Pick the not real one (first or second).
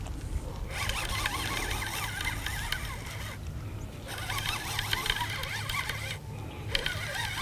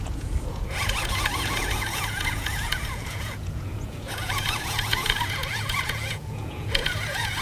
second